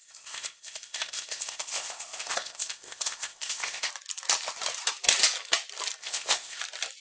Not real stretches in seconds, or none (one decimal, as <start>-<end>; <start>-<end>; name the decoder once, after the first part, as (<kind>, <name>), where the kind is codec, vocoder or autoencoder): 0.0-3.9 (codec, ZipCodec); 6.0-6.6